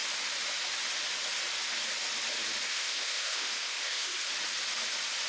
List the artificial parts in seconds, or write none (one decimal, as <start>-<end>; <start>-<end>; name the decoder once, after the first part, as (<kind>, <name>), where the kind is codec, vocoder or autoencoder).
2.7-4.3 (codec, ZipCodec)